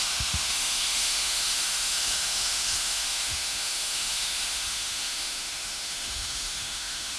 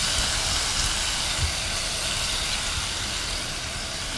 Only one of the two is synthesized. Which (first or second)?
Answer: first